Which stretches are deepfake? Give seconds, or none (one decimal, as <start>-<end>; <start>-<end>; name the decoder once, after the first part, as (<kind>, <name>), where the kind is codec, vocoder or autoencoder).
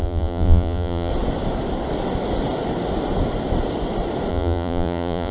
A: 0.0-1.1 (vocoder, Vocos); 4.3-5.3